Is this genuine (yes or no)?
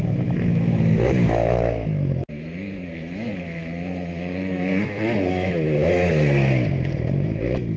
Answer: no